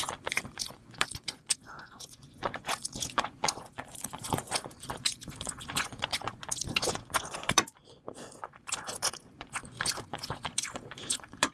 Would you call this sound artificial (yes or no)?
yes